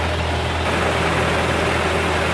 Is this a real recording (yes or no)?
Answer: yes